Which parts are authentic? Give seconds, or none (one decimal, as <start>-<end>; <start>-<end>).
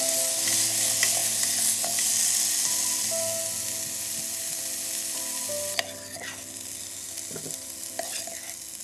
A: 0.0-8.8